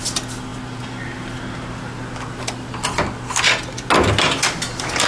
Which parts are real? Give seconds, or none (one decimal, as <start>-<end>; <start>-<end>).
0.0-5.1